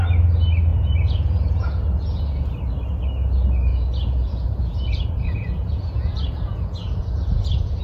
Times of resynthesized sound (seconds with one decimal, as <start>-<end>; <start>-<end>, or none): 0.7-2.2; 3.7-7.8